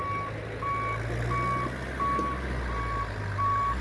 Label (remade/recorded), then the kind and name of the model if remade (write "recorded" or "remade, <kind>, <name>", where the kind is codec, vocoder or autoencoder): recorded